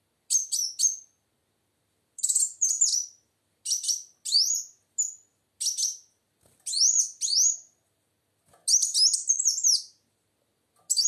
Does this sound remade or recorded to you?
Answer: recorded